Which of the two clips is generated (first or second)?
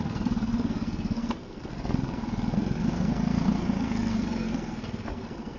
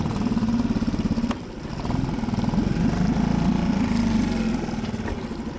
first